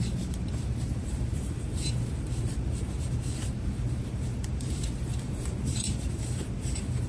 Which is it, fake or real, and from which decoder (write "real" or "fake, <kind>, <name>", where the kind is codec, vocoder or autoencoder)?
fake, vocoder, BigVGAN v2